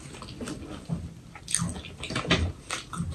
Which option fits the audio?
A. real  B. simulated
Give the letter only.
A